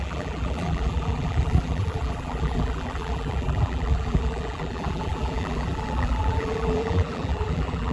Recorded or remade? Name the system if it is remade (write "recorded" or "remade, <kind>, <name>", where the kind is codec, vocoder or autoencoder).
remade, vocoder, BigVGAN v2